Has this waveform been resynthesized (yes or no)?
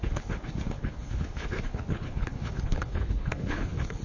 yes